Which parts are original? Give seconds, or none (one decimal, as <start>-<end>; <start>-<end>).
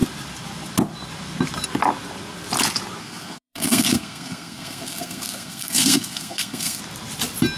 0.0-3.0; 6.8-7.6